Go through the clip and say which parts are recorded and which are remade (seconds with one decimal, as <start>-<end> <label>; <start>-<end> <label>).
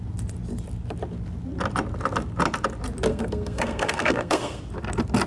0.0-3.1 recorded; 3.1-4.6 remade; 4.6-5.3 recorded